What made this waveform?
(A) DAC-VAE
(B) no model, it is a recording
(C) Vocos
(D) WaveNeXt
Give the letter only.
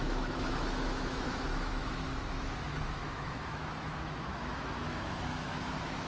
A